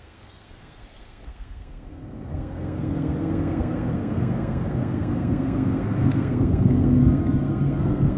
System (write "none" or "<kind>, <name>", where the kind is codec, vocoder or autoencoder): codec, SNAC